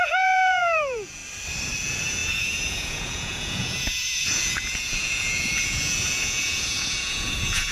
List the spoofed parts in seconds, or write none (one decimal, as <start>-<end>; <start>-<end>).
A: 0.0-1.2; 1.8-7.7